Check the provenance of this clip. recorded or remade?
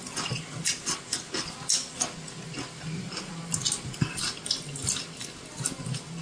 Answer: recorded